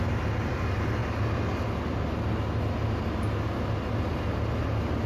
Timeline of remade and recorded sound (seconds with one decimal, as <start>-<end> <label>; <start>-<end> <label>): 0.0-5.1 recorded